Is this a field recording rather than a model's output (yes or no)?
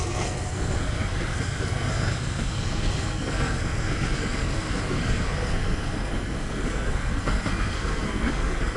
no